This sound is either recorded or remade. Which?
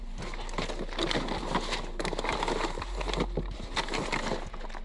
recorded